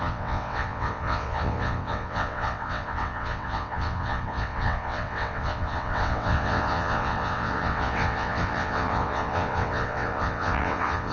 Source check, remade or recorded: remade